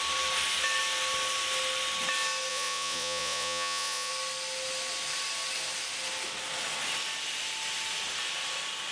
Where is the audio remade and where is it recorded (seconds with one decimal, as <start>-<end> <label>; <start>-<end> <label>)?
0.0-2.5 recorded; 2.5-4.1 remade; 4.1-8.9 recorded